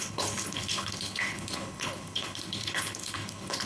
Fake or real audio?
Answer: fake